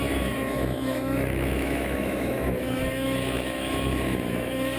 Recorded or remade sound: remade